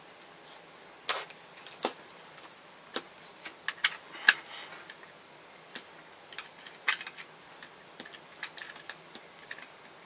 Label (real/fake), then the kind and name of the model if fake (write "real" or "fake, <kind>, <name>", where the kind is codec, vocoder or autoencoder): real